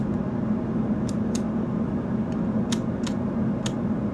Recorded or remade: recorded